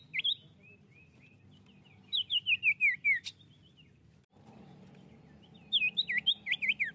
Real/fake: real